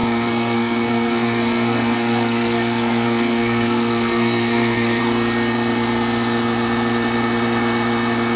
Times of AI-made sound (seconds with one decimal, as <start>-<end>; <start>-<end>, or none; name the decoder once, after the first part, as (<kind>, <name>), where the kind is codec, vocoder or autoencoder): 0.0-5.0 (codec, SNAC)